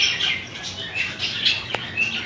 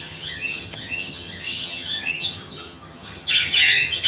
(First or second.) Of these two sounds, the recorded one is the first